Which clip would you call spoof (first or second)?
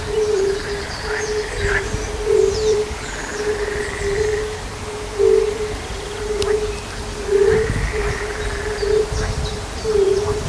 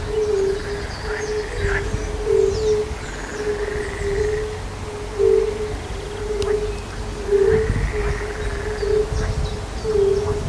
first